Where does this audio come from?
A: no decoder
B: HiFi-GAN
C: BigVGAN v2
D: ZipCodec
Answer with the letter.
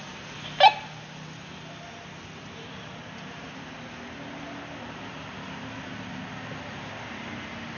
A